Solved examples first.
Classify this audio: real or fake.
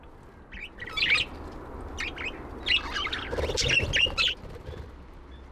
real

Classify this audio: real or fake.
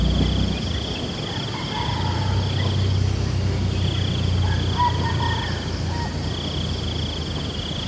real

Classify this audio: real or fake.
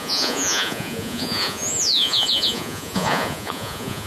fake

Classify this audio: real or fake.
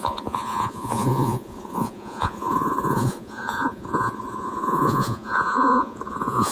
fake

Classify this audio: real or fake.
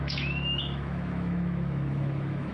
fake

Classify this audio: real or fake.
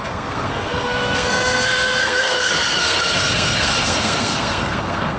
fake